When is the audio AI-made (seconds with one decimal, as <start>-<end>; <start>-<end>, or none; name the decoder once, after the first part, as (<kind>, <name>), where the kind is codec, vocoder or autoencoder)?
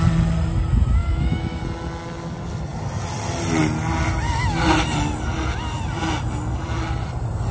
1.0-1.6 (autoencoder, DAC-VAE)